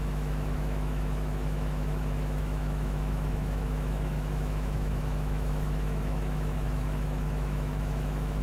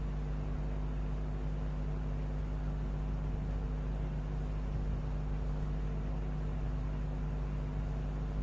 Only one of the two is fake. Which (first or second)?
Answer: first